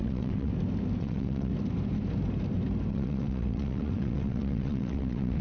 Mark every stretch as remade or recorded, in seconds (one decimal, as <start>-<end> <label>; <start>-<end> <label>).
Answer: 0.0-0.5 remade; 0.5-1.0 recorded; 1.0-1.5 remade; 1.5-2.9 recorded; 2.9-5.4 remade